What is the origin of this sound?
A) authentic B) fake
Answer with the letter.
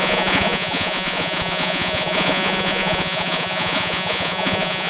B